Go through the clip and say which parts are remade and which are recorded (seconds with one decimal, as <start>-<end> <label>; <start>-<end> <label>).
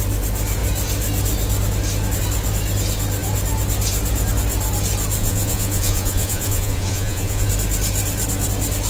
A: 0.0-5.2 recorded; 5.2-7.5 remade; 7.5-8.9 recorded